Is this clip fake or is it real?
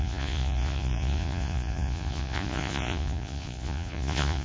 fake